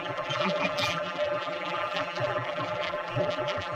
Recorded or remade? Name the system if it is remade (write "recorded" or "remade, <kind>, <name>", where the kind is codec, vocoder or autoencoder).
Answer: remade, vocoder, BigVGAN v2